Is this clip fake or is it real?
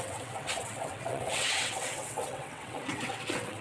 fake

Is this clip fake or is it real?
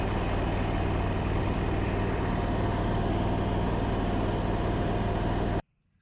real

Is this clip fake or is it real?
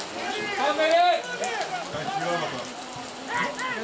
real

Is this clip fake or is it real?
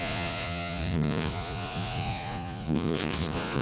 fake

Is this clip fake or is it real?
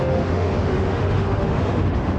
fake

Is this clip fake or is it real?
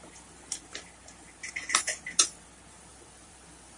real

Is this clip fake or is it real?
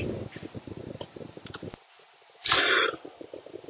real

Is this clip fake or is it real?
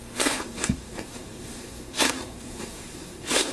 fake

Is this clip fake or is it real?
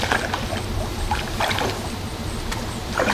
real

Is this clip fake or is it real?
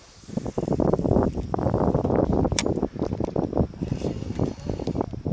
real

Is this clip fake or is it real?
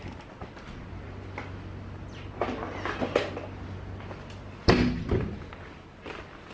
real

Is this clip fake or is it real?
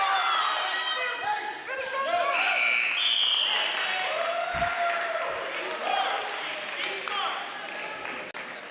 real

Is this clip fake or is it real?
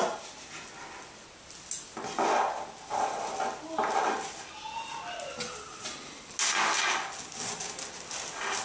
real